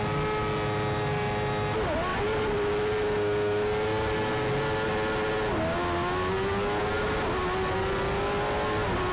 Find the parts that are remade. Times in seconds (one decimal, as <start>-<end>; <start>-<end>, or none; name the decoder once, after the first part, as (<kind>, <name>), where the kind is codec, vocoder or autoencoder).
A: none